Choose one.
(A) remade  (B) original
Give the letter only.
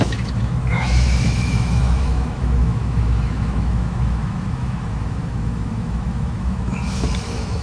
A